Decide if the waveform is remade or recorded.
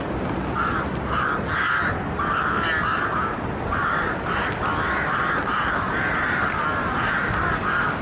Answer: recorded